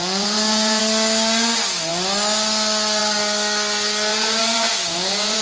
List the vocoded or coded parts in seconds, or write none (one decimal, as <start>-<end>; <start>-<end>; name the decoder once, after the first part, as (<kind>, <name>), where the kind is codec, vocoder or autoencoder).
0.0-0.8 (vocoder, Vocos); 4.1-5.4